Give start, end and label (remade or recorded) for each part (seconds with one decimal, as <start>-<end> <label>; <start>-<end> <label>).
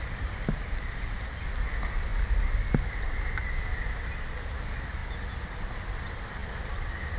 0.0-7.2 recorded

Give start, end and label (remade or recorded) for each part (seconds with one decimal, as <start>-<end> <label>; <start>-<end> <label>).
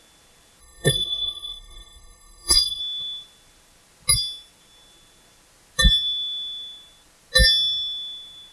0.0-0.6 recorded; 0.6-2.8 remade; 2.8-8.5 recorded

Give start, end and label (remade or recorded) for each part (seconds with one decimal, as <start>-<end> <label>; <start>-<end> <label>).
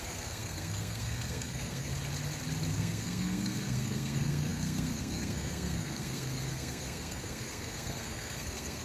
0.0-1.9 remade; 1.9-2.7 recorded; 2.7-8.8 remade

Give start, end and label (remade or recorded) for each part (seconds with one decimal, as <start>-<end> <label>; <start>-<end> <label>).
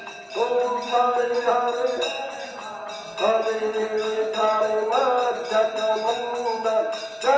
0.0-7.4 recorded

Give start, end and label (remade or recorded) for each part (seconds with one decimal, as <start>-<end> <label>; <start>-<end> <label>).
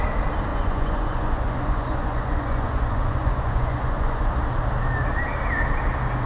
0.0-0.5 recorded; 0.5-4.3 remade; 4.3-6.3 recorded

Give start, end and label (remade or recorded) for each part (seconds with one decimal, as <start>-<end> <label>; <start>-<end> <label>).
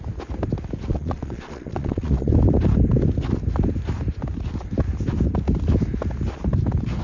0.0-0.9 recorded; 0.9-2.3 remade; 2.3-7.0 recorded